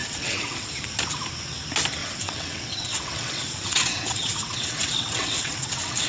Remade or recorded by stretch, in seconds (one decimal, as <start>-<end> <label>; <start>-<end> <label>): 0.0-0.7 remade; 0.7-2.0 recorded; 2.0-6.1 remade